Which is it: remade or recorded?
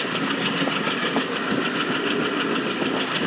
recorded